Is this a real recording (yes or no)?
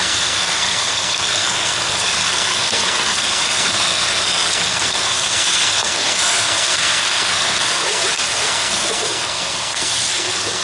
no